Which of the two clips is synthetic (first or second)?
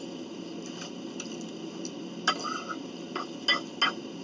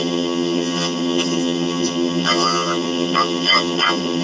second